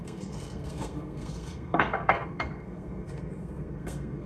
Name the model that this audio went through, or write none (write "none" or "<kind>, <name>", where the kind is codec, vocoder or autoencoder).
codec, SNAC